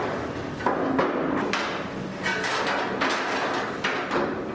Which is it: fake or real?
real